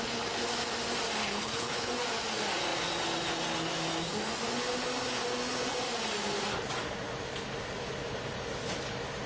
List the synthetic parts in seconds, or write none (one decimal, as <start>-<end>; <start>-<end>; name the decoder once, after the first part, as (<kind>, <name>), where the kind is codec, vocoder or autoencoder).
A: 1.2-1.9 (codec, HILCodec)